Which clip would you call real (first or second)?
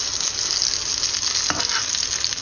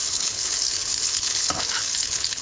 first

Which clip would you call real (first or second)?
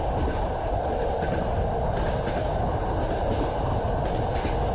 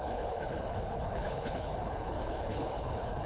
first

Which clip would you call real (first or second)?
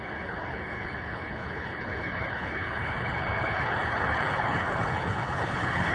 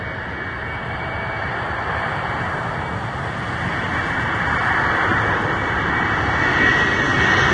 second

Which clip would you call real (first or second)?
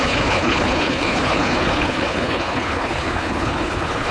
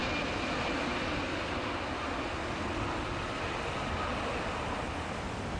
second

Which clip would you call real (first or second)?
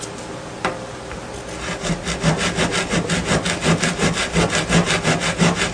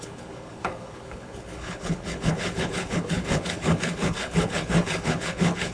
first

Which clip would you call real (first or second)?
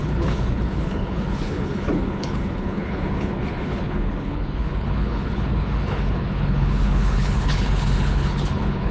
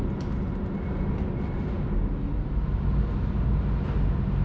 second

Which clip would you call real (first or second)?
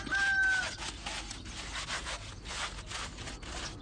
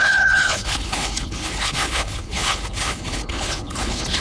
first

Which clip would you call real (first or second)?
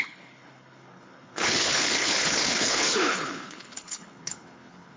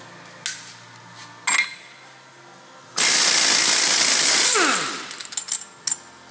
second